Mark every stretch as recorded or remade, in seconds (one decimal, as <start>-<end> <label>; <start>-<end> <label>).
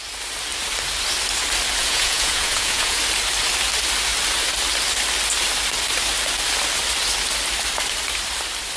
0.0-1.8 recorded; 1.8-3.0 remade; 3.0-8.8 recorded